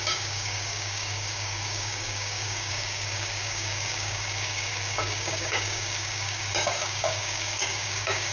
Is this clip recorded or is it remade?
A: remade